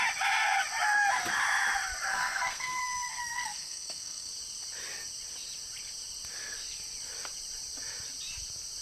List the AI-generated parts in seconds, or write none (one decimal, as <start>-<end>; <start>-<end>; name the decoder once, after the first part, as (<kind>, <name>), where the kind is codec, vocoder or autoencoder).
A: 2.1-4.3 (codec, SNAC)